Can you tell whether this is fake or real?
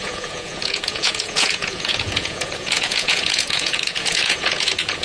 fake